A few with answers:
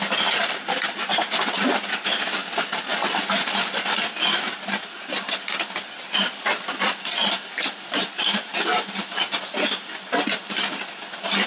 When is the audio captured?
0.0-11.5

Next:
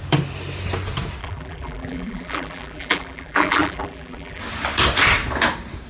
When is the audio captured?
0.0-1.2; 4.4-5.9

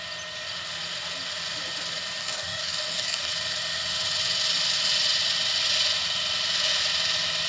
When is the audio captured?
0.0-2.2; 3.3-7.5

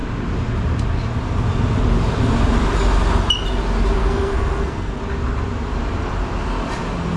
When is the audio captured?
0.0-4.0; 5.0-7.2

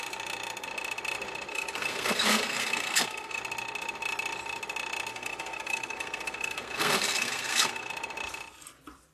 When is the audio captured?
0.0-1.5; 3.4-5.1; 7.9-9.1

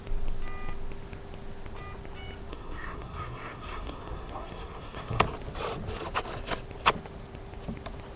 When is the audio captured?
0.0-2.5; 5.2-8.2